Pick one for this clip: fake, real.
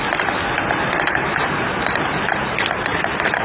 real